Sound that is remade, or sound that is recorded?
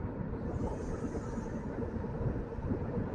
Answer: recorded